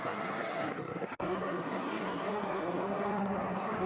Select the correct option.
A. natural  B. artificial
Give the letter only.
B